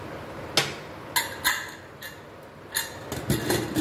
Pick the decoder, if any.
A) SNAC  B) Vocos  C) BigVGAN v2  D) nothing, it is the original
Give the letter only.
D